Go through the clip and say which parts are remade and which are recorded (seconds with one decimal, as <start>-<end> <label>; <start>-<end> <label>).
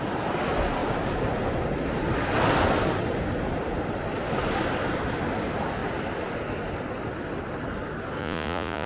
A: 0.0-8.2 recorded; 8.2-8.9 remade